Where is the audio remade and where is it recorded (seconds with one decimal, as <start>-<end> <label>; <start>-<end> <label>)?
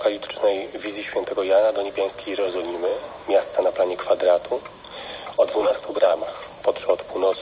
0.0-5.6 recorded; 5.6-6.4 remade; 6.4-7.4 recorded